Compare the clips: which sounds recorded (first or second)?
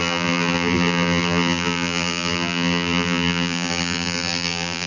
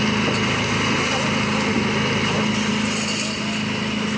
second